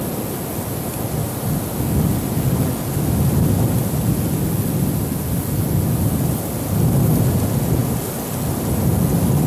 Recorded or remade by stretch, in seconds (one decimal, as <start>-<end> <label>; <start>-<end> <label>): 0.0-9.5 recorded